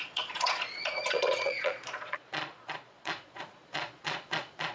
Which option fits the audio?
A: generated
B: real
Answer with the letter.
A